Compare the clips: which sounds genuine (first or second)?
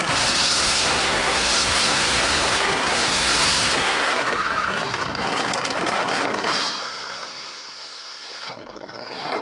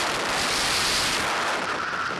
second